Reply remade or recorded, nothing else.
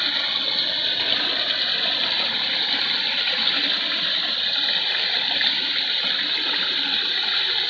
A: recorded